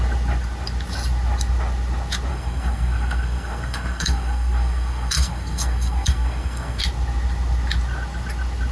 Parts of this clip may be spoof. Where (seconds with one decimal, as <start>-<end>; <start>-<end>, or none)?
2.3-6.8